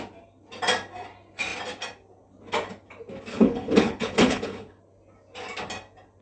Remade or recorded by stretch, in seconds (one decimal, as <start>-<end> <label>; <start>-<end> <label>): 0.0-3.3 recorded; 3.3-4.8 remade; 4.8-6.2 recorded